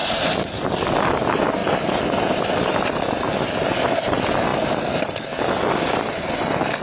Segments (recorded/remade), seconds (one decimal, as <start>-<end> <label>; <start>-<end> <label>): 0.0-1.0 remade; 1.0-6.8 recorded